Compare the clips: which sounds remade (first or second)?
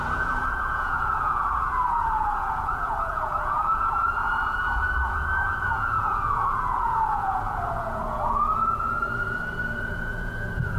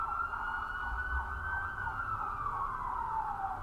first